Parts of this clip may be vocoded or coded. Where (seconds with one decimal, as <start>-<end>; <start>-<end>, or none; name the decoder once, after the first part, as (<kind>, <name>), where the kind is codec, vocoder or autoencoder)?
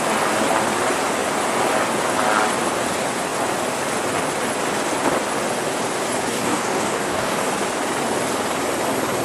6.3-7.5 (codec, DAC)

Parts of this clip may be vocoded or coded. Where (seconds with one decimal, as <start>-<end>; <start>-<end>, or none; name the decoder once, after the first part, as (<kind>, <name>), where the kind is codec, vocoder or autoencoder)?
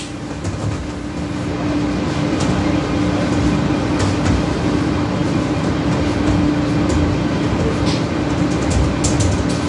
none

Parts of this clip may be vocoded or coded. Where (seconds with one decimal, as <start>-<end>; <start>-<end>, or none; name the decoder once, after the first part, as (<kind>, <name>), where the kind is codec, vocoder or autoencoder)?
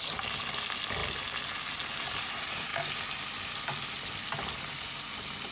none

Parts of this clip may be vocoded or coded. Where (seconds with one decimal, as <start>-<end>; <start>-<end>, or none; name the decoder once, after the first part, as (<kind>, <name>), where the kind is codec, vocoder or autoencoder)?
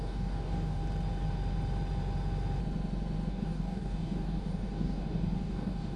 0.0-0.8 (codec, DAC); 3.3-6.0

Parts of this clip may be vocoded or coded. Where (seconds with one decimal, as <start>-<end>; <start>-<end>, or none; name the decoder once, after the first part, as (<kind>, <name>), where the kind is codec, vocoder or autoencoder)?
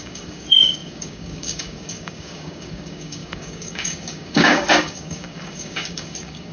0.0-6.5 (codec, DAC)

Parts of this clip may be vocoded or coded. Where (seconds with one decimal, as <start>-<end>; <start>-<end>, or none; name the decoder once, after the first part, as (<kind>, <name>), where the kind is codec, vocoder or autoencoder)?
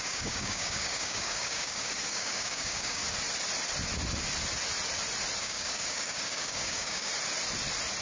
0.0-3.0 (codec, DAC); 5.4-7.1